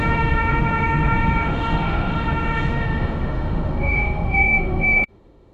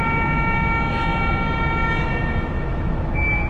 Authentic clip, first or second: second